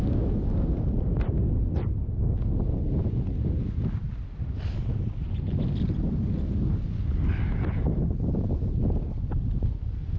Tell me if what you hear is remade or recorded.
recorded